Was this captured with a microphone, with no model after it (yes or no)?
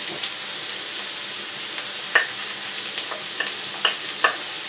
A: yes